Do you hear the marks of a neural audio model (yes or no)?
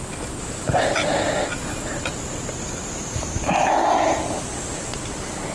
no